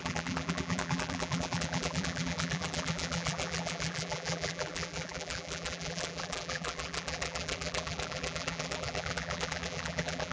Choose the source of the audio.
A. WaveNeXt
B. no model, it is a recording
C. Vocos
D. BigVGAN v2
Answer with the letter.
D